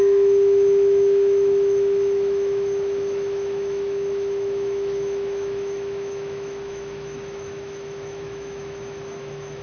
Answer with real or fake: fake